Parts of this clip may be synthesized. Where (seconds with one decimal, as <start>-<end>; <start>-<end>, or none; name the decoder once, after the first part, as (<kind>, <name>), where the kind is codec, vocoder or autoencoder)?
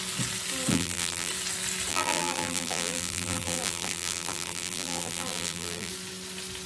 0.7-1.3 (vocoder, BigVGAN v2); 1.9-5.9